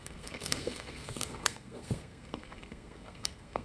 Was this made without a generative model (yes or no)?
no